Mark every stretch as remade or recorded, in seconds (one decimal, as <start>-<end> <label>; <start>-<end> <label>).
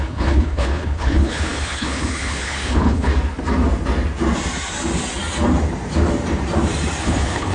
0.0-3.1 remade; 3.1-7.0 recorded; 7.0-7.5 remade